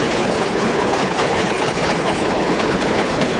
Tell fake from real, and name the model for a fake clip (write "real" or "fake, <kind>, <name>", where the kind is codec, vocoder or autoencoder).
fake, codec, HILCodec